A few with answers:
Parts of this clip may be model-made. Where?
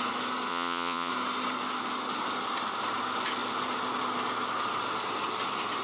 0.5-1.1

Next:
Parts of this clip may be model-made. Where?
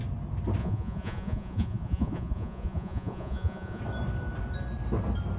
0.6-3.8